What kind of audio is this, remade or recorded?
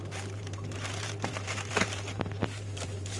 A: remade